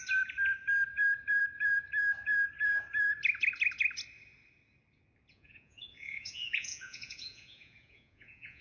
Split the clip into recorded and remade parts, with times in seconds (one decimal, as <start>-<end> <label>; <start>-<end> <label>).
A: 0.0-5.3 recorded; 5.3-8.6 remade